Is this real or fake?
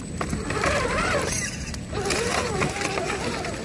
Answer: real